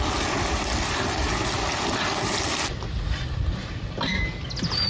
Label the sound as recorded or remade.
recorded